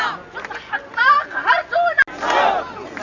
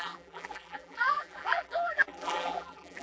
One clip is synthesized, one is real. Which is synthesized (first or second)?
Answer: second